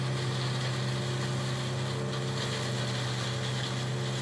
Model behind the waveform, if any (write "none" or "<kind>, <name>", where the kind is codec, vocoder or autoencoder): none